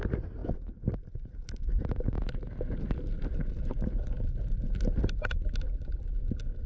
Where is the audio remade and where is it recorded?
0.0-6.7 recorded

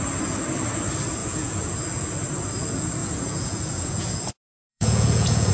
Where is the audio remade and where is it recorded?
0.0-1.2 recorded; 1.2-1.8 remade; 1.8-3.0 recorded; 3.0-4.3 remade; 4.3-4.7 recorded; 4.7-5.5 remade

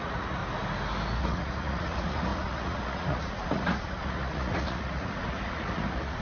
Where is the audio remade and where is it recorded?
0.0-0.4 remade; 0.4-1.2 recorded; 1.2-6.2 remade

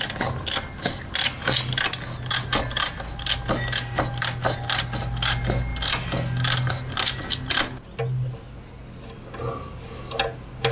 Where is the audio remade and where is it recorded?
0.0-10.7 recorded

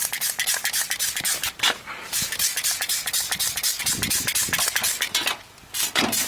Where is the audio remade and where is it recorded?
0.0-6.3 recorded

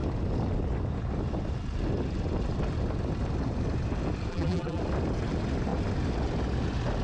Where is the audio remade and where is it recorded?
0.0-4.3 recorded; 4.3-4.8 remade; 4.8-7.0 recorded

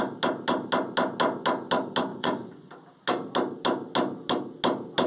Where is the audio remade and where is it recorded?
0.0-2.1 recorded; 2.1-2.7 remade; 2.7-5.1 recorded